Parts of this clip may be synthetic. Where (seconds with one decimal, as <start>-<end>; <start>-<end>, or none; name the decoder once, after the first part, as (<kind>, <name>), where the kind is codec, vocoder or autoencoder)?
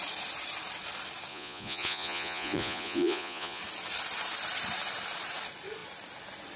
1.3-3.6 (vocoder, Vocos)